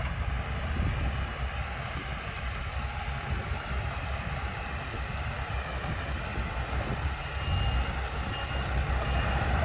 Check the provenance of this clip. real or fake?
real